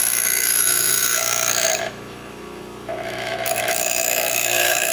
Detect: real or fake fake